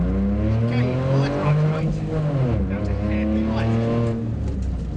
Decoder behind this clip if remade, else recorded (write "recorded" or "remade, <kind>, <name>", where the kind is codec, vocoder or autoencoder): recorded